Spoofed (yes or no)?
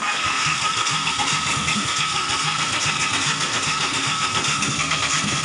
yes